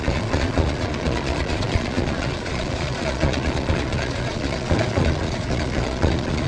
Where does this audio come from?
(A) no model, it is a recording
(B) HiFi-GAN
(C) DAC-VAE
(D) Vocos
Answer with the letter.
D